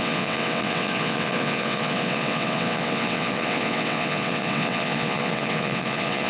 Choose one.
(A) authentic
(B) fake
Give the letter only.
B